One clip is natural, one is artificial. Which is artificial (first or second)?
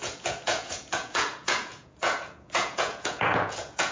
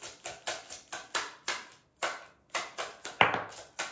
first